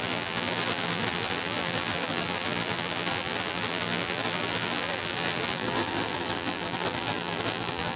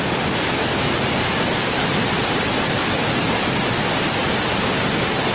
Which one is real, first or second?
second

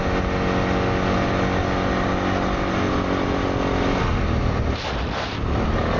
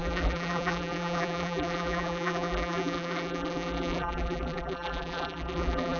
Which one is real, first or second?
first